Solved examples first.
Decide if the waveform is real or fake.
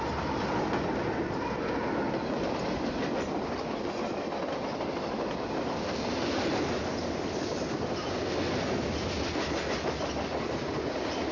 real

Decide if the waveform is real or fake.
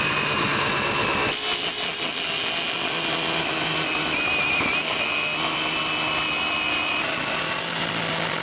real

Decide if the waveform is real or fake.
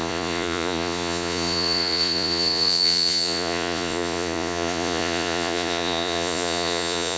fake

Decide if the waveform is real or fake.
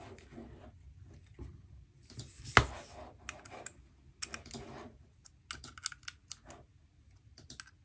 real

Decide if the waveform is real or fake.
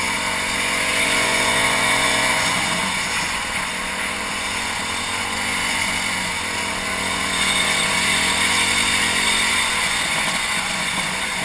fake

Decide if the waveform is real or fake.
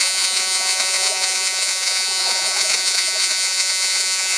fake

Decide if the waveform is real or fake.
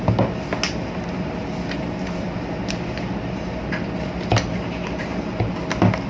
real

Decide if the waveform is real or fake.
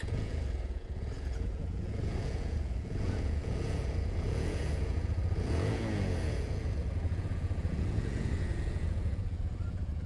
fake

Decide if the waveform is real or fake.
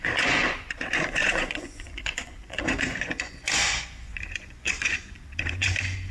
fake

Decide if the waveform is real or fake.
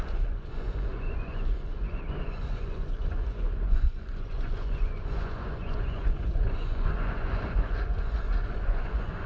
fake